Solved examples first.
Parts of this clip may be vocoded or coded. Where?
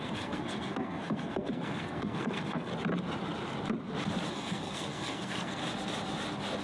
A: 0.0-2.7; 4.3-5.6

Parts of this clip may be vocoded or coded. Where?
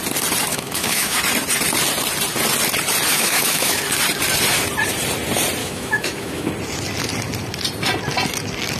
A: 0.5-1.2; 3.1-3.8; 5.6-6.5